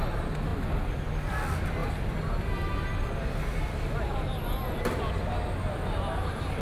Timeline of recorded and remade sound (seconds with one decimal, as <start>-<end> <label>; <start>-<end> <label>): 0.0-6.6 recorded